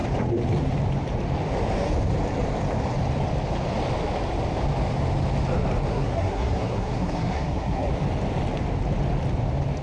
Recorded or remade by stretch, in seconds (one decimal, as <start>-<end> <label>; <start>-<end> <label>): 0.0-5.9 recorded; 5.9-7.9 remade; 7.9-9.8 recorded